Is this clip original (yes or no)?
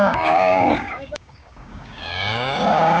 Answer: no